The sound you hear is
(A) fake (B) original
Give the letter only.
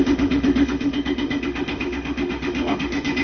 A